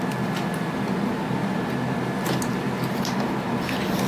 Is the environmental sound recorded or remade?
recorded